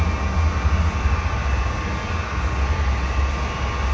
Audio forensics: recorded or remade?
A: recorded